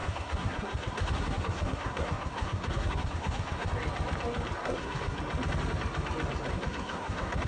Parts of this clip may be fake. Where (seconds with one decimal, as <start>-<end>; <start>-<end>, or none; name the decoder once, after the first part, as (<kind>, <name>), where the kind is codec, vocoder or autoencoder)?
0.0-3.7 (codec, SNAC); 4.6-5.2; 6.5-7.5